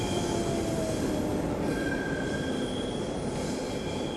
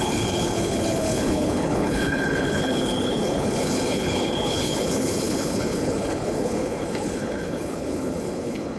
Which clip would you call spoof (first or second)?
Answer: second